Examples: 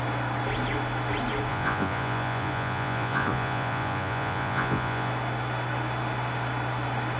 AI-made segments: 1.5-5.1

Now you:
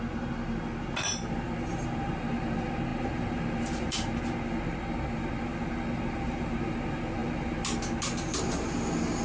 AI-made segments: none